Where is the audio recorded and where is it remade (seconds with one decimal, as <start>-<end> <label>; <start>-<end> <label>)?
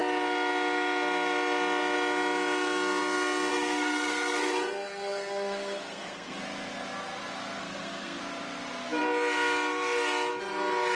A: 0.0-3.5 recorded; 3.5-6.4 remade; 6.4-7.6 recorded; 7.6-8.2 remade; 8.2-10.9 recorded